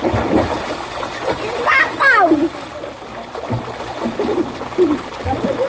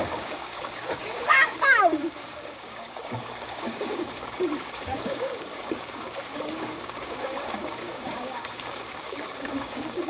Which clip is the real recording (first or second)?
first